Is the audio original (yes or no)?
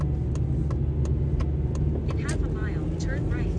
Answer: yes